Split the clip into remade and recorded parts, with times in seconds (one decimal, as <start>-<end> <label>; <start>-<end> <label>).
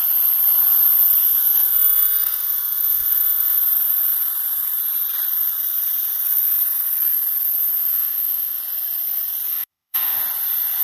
0.0-1.4 recorded; 1.4-3.6 remade; 3.6-7.9 recorded; 7.9-8.6 remade; 8.6-9.5 recorded; 9.5-10.2 remade; 10.2-10.8 recorded